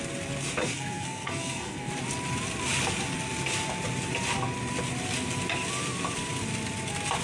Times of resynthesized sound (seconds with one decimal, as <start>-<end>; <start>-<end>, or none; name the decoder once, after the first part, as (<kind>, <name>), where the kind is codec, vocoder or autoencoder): 0.6-1.9 (codec, SNAC)